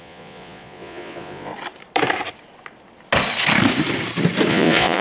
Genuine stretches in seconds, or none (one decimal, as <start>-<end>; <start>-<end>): 1.5-4.5

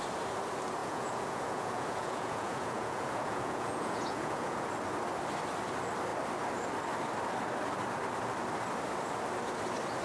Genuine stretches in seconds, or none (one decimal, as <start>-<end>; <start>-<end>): 0.0-0.8; 4.7-10.0

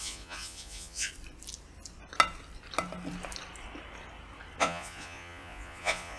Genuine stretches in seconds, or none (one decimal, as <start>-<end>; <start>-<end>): 1.1-4.6

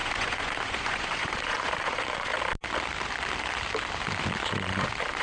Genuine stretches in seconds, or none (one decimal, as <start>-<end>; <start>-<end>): 2.3-5.2